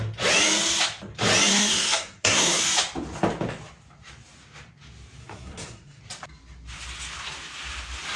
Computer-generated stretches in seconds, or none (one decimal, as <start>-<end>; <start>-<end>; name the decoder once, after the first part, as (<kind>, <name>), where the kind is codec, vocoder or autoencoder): 1.5-2.6 (codec, SNAC); 5.2-6.0

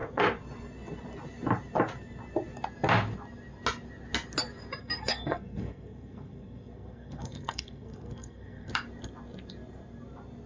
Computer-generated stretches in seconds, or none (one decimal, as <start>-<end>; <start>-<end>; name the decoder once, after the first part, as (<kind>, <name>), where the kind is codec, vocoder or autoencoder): 4.8-8.7 (codec, SNAC)

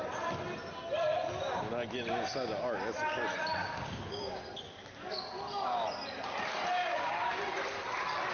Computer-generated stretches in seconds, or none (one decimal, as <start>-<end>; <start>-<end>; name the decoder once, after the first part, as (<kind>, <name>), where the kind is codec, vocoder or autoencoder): 3.6-4.4 (codec, DAC); 6.8-7.4

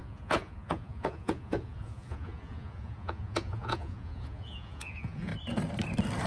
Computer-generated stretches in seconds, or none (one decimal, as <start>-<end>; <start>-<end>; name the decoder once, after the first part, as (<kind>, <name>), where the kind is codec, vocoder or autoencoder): 0.0-5.3 (vocoder, Vocos)